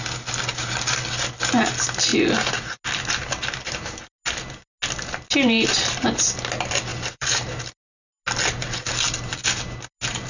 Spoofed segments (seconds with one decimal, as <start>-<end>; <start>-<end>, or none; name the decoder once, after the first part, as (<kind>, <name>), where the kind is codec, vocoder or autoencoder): 6.9-7.6 (vocoder, BigVGAN v2)